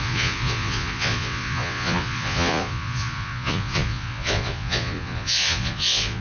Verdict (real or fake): fake